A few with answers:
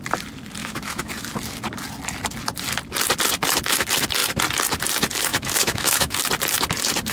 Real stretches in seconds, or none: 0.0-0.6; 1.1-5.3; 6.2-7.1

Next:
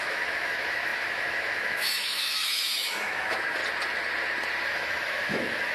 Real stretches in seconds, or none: 3.6-4.7